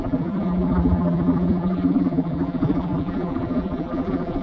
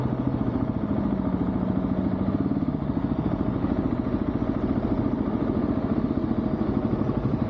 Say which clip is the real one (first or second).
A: second